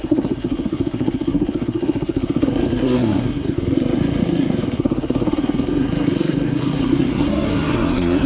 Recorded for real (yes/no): no